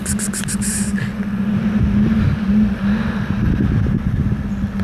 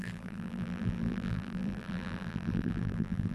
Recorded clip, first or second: first